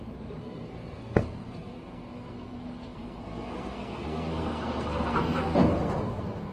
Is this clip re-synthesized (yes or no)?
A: yes